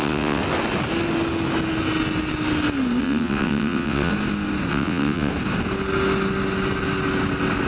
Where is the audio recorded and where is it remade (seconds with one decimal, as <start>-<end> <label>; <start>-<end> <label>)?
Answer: 0.0-0.4 remade; 0.4-3.0 recorded; 3.0-4.1 remade; 4.1-4.7 recorded; 4.7-5.3 remade; 5.3-7.7 recorded